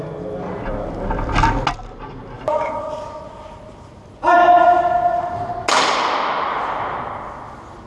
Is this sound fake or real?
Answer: real